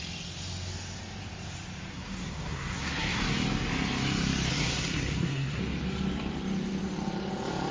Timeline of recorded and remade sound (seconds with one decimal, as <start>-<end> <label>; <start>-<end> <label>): 0.0-1.9 recorded; 1.9-3.2 remade; 3.2-4.5 recorded; 4.5-5.6 remade; 5.6-7.7 recorded